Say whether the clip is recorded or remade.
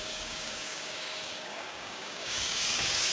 remade